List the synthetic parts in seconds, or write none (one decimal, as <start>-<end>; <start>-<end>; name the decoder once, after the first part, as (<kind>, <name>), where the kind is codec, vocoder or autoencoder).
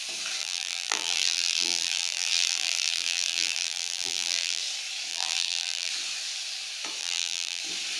0.4-4.6 (vocoder, BigVGAN v2); 5.1-5.9; 7.0-7.6